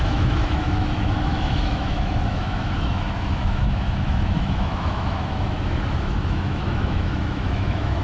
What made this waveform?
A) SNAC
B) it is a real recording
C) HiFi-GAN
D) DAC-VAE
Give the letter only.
D